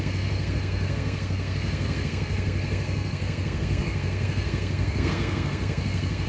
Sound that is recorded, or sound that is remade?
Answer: remade